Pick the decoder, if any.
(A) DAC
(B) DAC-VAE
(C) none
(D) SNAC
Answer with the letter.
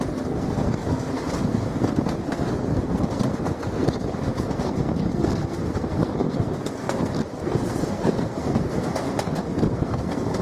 D